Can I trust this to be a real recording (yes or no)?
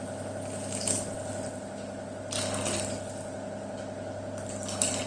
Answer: yes